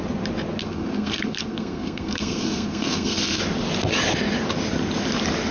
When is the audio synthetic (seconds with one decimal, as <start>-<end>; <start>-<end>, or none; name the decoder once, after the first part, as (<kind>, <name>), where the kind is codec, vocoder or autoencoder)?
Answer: 0.6-3.4 (codec, SNAC)